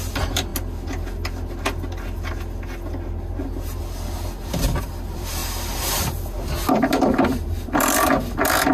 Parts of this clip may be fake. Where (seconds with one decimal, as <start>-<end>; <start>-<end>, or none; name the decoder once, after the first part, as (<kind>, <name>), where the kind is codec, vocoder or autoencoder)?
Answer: 0.0-0.5 (vocoder, BigVGAN v2); 4.5-5.4; 6.8-8.7